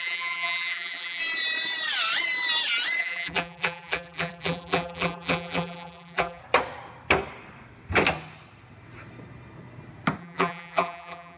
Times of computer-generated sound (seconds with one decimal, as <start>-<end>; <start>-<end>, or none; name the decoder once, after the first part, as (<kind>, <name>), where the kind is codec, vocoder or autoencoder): 0.0-1.2 (vocoder, BigVGAN v2); 3.0-6.4; 10.2-11.4